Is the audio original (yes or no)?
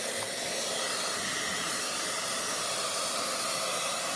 yes